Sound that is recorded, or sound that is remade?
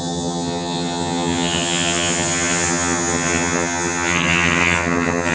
remade